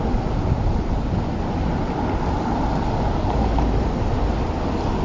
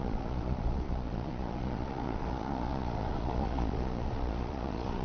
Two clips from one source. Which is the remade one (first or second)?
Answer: second